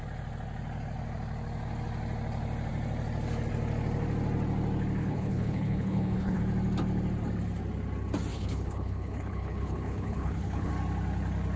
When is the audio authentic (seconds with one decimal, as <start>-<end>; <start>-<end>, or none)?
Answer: 0.0-5.0; 6.4-8.3; 10.7-11.6